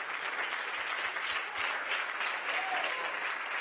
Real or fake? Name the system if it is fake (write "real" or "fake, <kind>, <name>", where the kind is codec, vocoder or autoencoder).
real